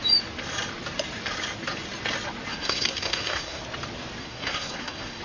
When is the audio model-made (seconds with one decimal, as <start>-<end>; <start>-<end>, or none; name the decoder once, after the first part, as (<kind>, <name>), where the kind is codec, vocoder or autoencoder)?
2.5-3.6 (codec, SNAC); 4.2-5.2